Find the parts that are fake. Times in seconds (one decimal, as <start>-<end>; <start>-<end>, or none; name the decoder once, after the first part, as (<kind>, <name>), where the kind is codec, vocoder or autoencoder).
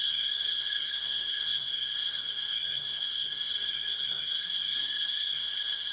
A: 0.0-5.9 (codec, SNAC)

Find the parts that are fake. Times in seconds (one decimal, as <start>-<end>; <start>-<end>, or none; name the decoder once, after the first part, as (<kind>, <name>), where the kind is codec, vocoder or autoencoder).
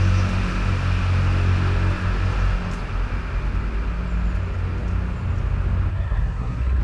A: 5.9-6.8 (codec, SNAC)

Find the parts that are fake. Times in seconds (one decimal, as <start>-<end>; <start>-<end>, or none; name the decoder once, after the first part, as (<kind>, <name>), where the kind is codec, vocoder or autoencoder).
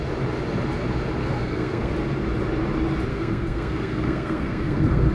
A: 1.2-1.9 (codec, SNAC); 3.1-5.1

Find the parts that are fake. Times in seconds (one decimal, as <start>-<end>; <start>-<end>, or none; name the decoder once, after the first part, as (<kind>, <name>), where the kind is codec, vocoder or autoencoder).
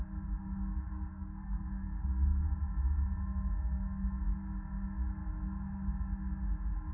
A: 1.1-2.5 (codec, SNAC)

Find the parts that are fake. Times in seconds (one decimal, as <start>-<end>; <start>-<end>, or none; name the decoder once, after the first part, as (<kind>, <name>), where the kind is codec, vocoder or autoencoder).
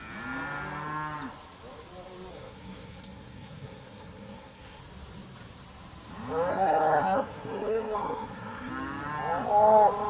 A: 2.3-4.8 (codec, SNAC); 6.5-8.7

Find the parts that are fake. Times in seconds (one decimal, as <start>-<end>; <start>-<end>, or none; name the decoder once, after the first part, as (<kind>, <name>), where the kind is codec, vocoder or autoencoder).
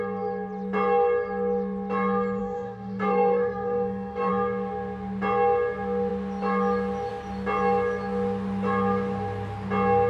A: 2.4-4.3 (codec, SNAC)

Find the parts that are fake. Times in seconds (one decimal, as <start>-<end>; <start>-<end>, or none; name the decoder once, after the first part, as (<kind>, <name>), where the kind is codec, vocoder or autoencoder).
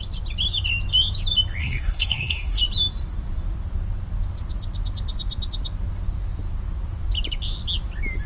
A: 1.6-2.6 (codec, SNAC)